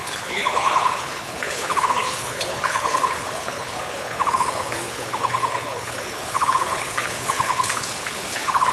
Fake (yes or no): yes